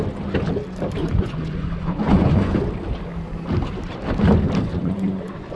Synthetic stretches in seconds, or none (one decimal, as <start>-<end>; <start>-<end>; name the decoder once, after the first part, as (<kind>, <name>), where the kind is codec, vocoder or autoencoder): 1.0-2.6 (vocoder, Vocos); 4.7-5.6